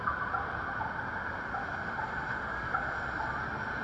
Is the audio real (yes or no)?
yes